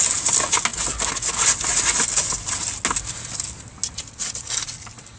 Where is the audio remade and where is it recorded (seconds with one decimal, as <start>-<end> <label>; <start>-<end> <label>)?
0.0-5.2 recorded